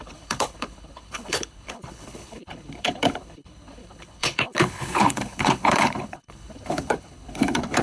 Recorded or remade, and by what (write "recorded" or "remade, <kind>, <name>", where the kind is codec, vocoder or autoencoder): remade, codec, HILCodec